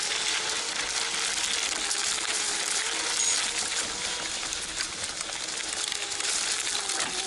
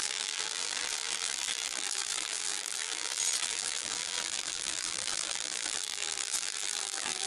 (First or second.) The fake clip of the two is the second